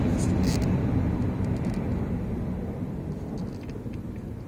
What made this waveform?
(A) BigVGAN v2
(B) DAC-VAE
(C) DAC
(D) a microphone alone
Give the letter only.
D